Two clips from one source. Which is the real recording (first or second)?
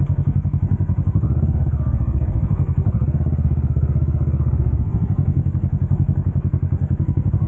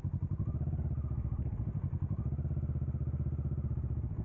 second